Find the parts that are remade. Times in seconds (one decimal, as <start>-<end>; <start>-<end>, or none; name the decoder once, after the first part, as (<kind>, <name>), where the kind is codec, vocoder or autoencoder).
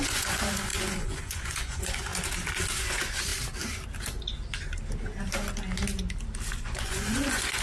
0.0-2.1 (vocoder, Vocos); 2.8-3.3; 6.5-7.6